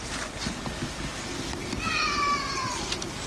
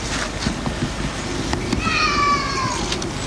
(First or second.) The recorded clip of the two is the second